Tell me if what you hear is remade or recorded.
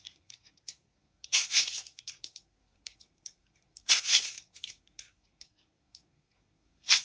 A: remade